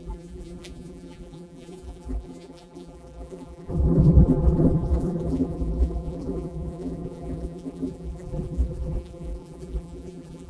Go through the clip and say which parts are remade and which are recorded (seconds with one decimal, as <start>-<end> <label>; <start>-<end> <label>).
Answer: 0.0-10.5 remade